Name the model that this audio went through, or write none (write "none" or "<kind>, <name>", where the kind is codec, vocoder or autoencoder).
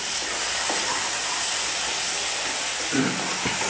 none